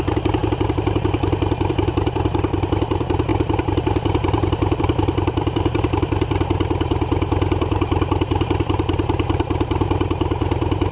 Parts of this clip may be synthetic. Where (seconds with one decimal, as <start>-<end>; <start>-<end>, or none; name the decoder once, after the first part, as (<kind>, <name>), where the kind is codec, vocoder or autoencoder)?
0.0-0.4 (vocoder, BigVGAN v2); 1.7-10.9